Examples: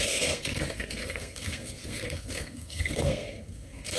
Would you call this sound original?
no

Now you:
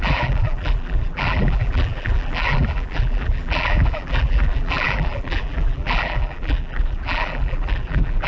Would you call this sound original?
no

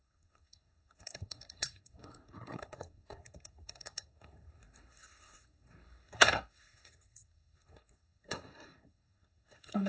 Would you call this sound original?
no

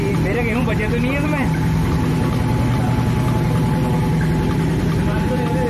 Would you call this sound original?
yes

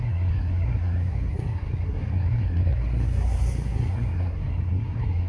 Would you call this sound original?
no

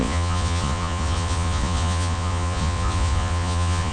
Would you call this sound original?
no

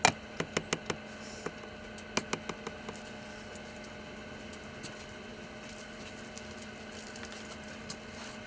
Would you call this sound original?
yes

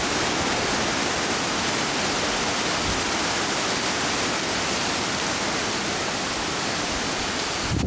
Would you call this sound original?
yes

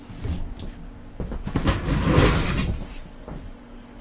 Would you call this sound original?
yes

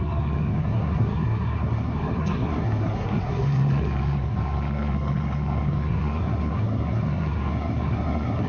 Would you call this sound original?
no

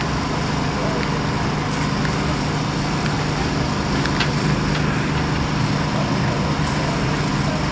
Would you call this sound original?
yes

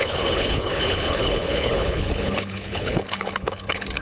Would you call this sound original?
no